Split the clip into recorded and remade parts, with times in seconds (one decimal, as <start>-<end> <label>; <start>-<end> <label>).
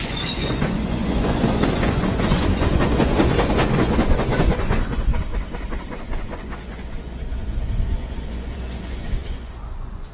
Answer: 0.0-5.1 remade; 5.1-5.7 recorded; 5.7-10.1 remade